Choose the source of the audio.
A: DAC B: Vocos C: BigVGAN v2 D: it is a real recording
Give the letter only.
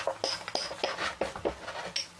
D